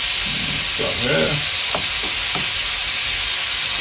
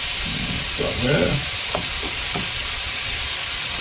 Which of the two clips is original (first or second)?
first